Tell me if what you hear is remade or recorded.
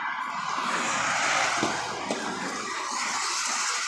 recorded